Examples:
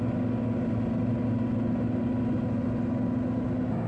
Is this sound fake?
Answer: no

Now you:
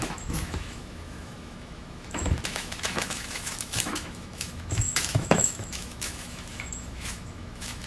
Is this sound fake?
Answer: yes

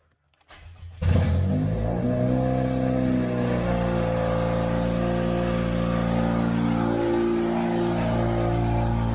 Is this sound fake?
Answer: no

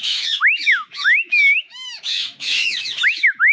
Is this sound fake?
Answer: yes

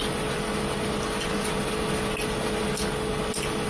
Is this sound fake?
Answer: no